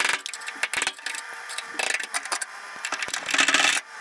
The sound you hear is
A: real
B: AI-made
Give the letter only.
A